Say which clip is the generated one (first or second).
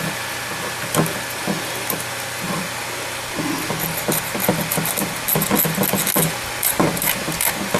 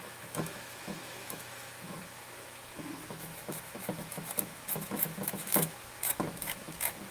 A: second